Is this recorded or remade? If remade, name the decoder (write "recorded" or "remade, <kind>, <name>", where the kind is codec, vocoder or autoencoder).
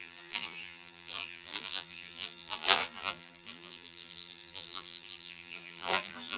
remade, vocoder, BigVGAN v2